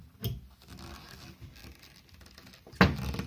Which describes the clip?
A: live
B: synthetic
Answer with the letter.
A